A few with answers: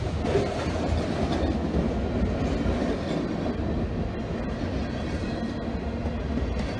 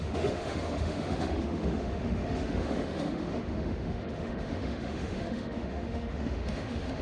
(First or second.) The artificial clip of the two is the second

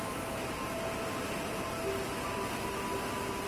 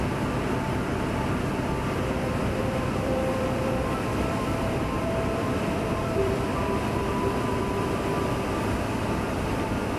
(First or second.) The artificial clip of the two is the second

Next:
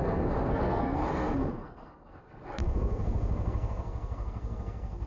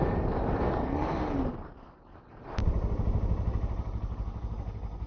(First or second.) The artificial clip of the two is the first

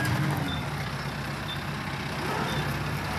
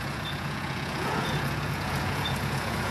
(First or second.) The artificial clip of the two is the second